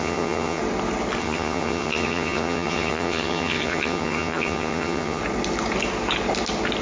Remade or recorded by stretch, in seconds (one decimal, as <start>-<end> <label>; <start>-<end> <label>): 0.0-0.6 remade; 0.6-1.2 recorded; 1.2-5.2 remade; 5.2-6.8 recorded